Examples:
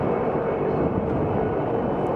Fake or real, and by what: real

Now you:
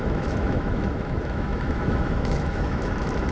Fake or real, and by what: fake, autoencoder, DAC-VAE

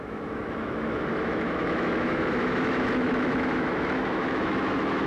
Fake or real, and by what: fake, autoencoder, DAC-VAE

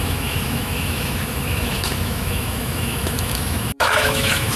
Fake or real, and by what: fake, autoencoder, DAC-VAE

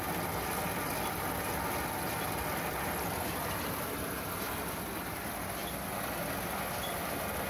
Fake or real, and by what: real